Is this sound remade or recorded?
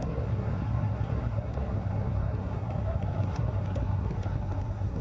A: remade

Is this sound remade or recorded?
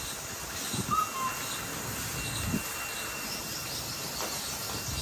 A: recorded